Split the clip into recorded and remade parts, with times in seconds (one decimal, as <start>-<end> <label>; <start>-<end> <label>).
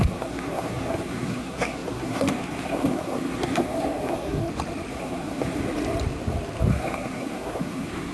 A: 0.0-4.4 remade; 4.4-4.9 recorded; 4.9-5.6 remade; 5.6-6.7 recorded; 6.7-8.1 remade